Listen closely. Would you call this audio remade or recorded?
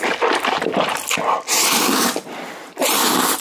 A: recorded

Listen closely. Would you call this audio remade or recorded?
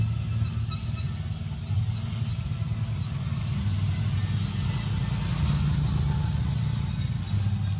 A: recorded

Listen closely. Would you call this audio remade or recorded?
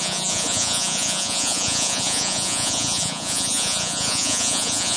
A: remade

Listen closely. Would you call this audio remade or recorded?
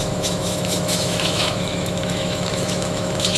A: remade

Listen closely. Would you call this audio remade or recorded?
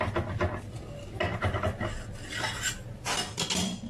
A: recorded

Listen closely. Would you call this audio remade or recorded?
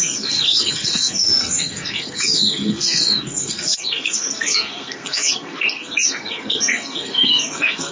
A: remade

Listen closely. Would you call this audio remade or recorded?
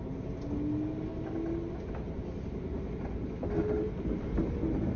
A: recorded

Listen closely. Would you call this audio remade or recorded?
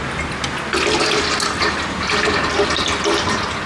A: recorded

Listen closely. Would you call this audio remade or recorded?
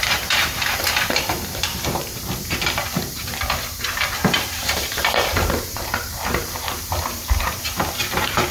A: remade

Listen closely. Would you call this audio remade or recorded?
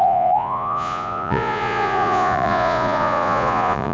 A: remade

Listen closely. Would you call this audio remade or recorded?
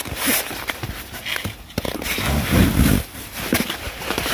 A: recorded